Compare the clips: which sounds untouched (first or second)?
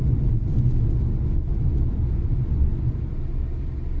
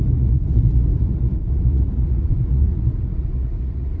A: first